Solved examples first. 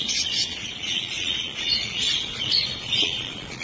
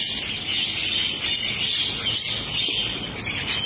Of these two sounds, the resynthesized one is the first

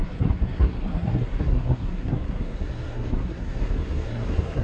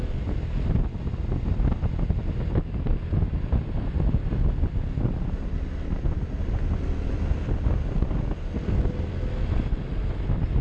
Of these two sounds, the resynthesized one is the first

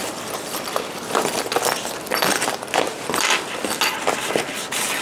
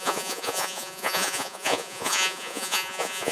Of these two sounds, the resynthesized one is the second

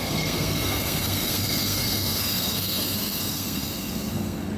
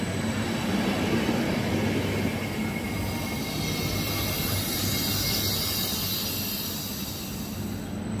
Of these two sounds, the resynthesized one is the first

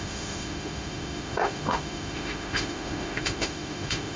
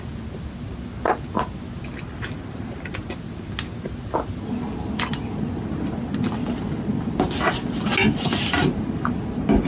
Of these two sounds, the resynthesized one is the first